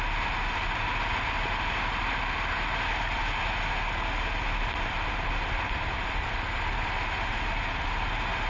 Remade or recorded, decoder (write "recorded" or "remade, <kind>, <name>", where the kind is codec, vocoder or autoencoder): recorded